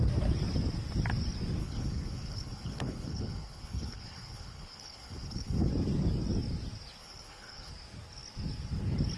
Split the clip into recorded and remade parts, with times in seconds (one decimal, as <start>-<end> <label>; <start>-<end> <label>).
0.0-1.6 recorded; 1.6-5.7 remade; 5.7-7.0 recorded; 7.0-7.7 remade; 7.7-9.2 recorded